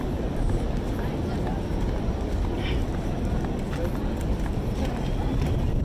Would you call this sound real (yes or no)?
yes